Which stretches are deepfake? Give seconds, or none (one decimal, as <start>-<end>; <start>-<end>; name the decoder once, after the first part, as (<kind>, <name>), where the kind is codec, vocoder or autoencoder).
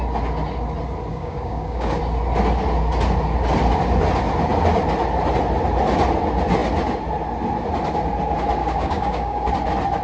1.1-2.0 (codec, DAC); 8.6-9.5